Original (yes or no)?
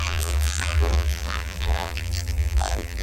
no